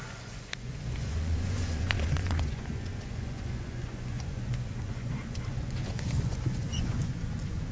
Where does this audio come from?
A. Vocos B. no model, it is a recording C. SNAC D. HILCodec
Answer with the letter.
A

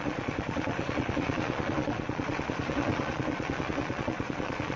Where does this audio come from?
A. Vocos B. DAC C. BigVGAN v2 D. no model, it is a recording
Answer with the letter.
A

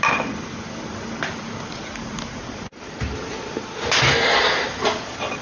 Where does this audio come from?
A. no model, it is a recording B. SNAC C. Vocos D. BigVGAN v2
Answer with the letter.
A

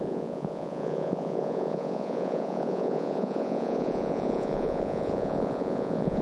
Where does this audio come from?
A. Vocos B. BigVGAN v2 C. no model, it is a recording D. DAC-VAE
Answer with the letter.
A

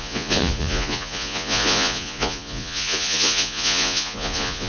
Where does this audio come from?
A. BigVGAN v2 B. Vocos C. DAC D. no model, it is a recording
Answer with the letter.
B